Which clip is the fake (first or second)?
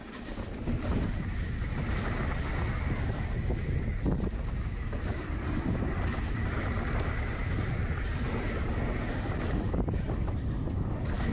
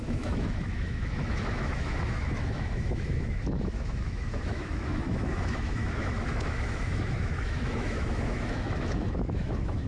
second